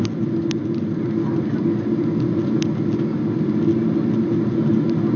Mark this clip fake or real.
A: real